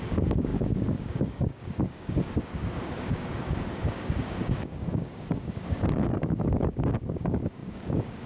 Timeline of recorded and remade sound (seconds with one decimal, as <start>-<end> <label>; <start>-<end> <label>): 0.0-8.3 remade